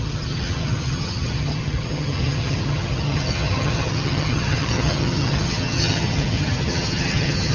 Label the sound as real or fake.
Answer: fake